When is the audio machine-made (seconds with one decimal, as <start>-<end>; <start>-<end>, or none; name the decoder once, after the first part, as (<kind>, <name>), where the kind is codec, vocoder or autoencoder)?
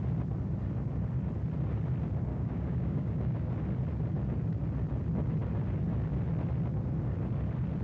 2.3-3.5 (codec, DAC)